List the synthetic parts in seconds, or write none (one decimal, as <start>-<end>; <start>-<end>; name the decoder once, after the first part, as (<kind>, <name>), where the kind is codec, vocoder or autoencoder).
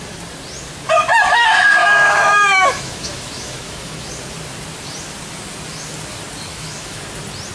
1.1-4.1 (autoencoder, DAC-VAE); 6.5-7.0